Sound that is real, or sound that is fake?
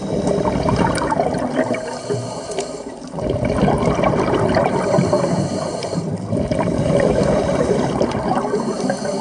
fake